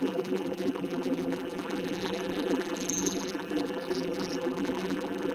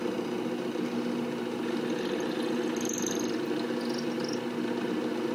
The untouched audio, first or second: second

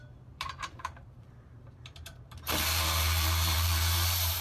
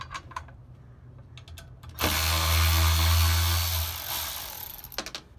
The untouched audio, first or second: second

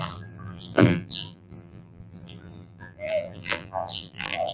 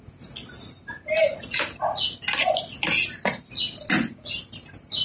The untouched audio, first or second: second